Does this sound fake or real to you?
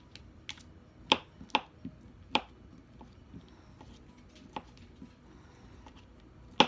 real